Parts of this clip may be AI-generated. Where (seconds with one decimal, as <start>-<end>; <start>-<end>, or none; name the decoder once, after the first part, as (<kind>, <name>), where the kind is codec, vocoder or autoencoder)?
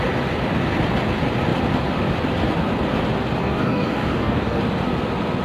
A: 3.4-4.6 (codec, DAC)